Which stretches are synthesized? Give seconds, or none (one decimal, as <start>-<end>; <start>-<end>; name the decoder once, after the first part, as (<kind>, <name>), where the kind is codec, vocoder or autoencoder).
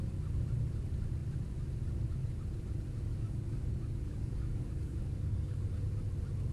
3.1-5.7 (codec, DAC)